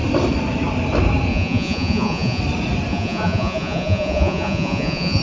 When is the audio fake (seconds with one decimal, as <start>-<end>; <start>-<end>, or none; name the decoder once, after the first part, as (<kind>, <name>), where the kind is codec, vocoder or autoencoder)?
1.3-2.4 (vocoder, Vocos); 2.9-5.2